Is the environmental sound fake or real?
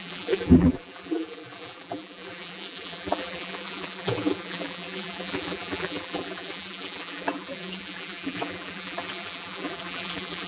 fake